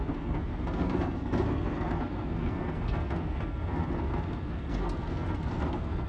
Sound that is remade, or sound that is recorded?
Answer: remade